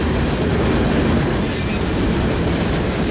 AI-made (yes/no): no